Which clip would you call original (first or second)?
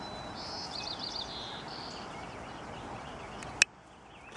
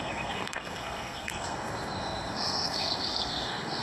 first